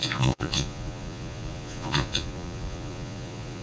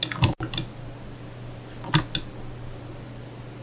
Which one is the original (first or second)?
second